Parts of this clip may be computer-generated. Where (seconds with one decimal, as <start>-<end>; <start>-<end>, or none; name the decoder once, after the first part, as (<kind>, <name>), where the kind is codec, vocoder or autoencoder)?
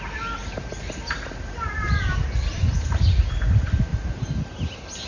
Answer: 0.4-2.6 (vocoder, BigVGAN v2); 3.9-4.4